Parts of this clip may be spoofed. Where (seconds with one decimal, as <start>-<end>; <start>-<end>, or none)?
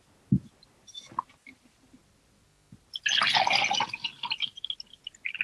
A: none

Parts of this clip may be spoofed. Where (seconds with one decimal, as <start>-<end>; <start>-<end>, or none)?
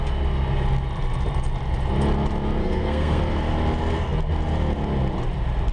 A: 2.6-3.2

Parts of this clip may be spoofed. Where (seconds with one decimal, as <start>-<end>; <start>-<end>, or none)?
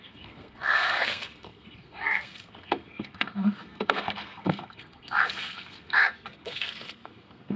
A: 0.0-7.6